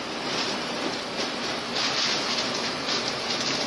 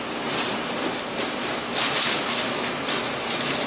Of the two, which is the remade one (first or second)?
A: first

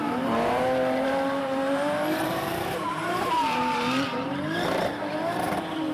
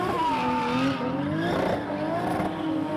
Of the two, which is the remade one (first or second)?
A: first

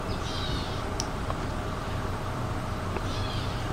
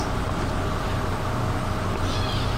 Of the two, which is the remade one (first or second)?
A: first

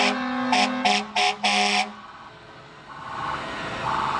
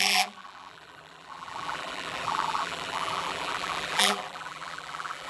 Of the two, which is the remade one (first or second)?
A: second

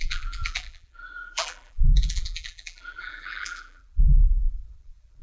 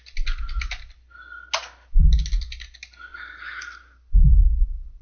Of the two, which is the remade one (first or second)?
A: first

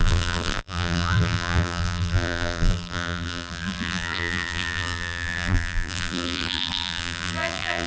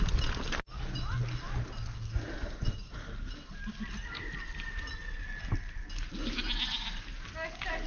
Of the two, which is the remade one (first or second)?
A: first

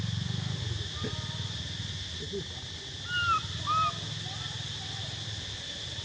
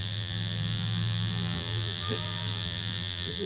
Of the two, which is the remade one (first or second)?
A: second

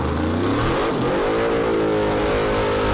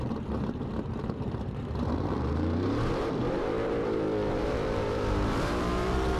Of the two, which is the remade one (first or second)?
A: second